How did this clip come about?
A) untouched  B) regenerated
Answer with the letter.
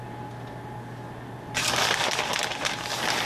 A